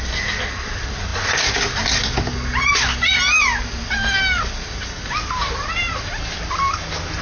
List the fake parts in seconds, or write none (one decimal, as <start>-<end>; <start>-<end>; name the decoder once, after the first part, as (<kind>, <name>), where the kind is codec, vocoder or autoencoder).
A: none

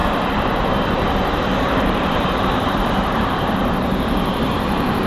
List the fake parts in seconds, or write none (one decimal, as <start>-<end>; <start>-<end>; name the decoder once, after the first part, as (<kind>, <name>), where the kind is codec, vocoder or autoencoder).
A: 0.0-5.1 (vocoder, BigVGAN v2)

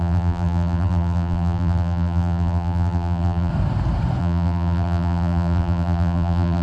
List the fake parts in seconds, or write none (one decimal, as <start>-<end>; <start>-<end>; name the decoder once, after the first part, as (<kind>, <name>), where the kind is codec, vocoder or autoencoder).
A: 0.0-3.5 (vocoder, BigVGAN v2); 4.2-6.6

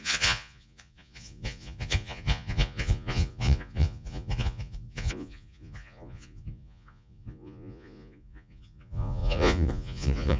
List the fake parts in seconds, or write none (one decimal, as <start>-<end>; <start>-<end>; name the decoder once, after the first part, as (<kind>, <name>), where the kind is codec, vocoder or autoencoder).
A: 0.0-10.4 (vocoder, Vocos)

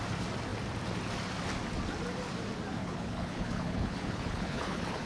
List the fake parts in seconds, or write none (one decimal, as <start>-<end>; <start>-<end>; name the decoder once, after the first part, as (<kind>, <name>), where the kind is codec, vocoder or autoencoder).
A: 2.8-5.1 (codec, HILCodec)

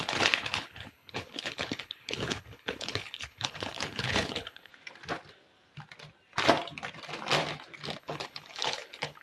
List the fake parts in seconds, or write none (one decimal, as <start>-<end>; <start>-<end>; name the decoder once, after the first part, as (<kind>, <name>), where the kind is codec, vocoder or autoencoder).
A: 0.0-4.7 (codec, HILCodec); 8.0-9.2

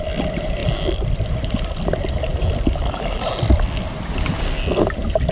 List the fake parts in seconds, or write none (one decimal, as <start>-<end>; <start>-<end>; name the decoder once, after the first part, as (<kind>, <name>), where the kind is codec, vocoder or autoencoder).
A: 0.6-1.5 (vocoder, BigVGAN v2)

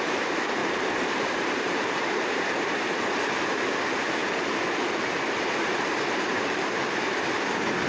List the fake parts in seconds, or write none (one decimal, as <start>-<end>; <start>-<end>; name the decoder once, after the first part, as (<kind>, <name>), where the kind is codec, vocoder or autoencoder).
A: 0.6-3.1 (vocoder, BigVGAN v2); 6.3-7.0